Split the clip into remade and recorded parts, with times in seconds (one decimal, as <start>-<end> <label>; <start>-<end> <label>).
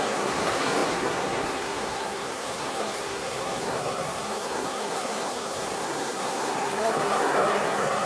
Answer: 0.0-8.1 remade